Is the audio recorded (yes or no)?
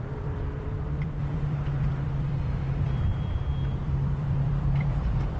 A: no